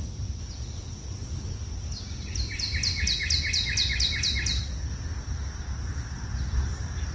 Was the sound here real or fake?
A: real